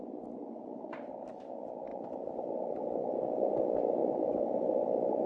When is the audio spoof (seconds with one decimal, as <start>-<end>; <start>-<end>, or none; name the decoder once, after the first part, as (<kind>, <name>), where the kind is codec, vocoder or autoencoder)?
0.4-1.4 (vocoder, BigVGAN v2); 1.9-3.2; 4.0-5.3